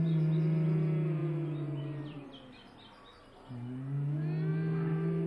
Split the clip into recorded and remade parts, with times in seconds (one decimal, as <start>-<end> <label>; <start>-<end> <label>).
0.0-5.3 recorded